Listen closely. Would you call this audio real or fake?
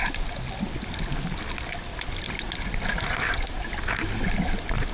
real